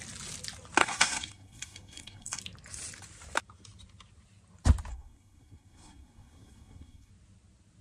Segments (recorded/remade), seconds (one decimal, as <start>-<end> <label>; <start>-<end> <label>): 0.0-0.8 recorded; 0.8-2.4 remade; 2.4-4.9 recorded; 4.9-7.1 remade; 7.1-7.8 recorded